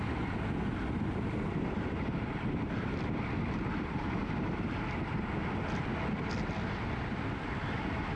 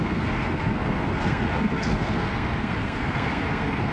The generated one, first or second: second